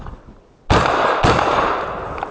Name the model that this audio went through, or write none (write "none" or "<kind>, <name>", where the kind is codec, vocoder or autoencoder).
none